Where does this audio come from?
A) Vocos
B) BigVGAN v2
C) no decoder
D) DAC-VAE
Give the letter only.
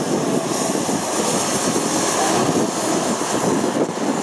C